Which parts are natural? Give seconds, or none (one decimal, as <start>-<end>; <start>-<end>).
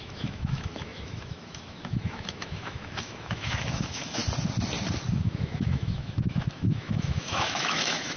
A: 4.2-5.1